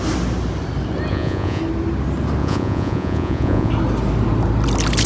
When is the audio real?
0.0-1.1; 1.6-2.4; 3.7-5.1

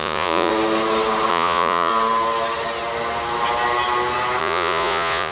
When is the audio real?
0.5-1.3; 1.9-4.4